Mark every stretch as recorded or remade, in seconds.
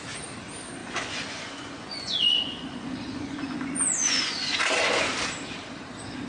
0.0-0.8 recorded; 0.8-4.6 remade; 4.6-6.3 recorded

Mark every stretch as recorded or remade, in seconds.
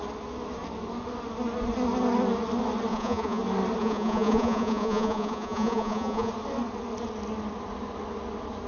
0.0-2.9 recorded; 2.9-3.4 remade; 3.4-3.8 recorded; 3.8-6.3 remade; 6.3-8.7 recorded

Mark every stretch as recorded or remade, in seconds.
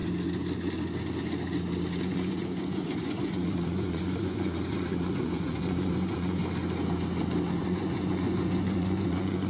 0.0-2.0 recorded; 2.0-6.4 remade; 6.4-7.6 recorded; 7.6-9.5 remade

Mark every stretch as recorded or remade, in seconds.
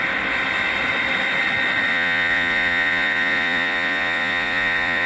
0.0-1.9 recorded; 1.9-5.1 remade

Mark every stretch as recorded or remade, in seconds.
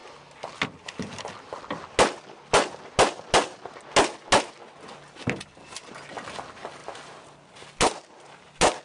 0.0-8.8 recorded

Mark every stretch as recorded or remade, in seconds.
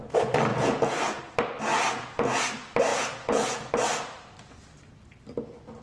0.0-0.5 recorded; 0.5-1.2 remade; 1.2-1.7 recorded; 1.7-2.4 remade; 2.4-2.9 recorded; 2.9-3.7 remade; 3.7-5.8 recorded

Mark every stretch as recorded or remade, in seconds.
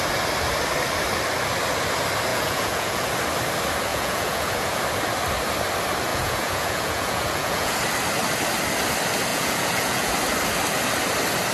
0.0-2.3 recorded; 2.3-3.1 remade; 3.1-3.9 recorded; 3.9-4.8 remade; 4.8-6.1 recorded; 6.1-7.7 remade; 7.7-9.3 recorded; 9.3-10.1 remade; 10.1-11.5 recorded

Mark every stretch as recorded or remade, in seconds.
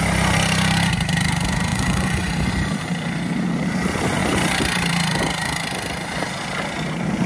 0.0-1.7 recorded; 1.7-2.3 remade; 2.3-7.3 recorded